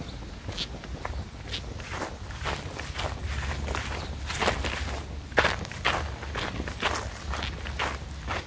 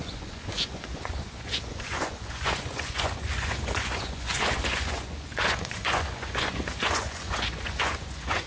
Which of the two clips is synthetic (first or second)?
second